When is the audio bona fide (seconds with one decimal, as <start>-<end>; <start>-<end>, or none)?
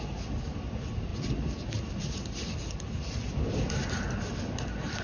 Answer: 0.0-5.0